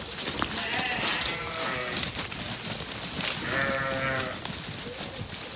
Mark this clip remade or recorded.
recorded